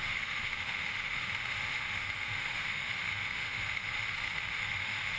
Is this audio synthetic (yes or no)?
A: yes